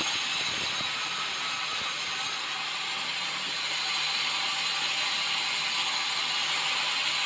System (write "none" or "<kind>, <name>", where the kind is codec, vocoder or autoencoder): none